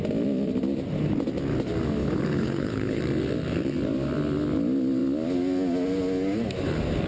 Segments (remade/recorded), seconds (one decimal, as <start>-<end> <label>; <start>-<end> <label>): 0.0-2.0 recorded; 2.0-3.0 remade; 3.0-7.1 recorded